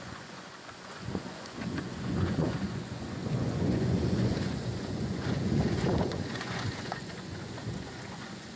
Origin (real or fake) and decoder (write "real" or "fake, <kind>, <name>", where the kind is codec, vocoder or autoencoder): fake, vocoder, Vocos